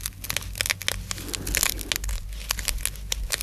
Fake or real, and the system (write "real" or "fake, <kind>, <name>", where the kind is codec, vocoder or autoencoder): real